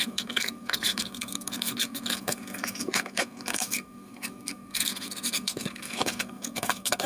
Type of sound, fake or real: fake